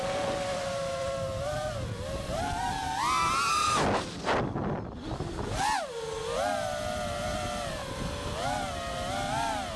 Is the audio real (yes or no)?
yes